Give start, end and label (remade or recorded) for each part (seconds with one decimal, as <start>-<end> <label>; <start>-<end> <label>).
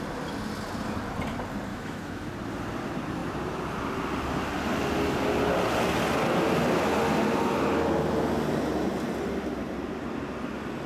0.0-1.7 recorded; 1.7-2.3 remade; 2.3-10.9 recorded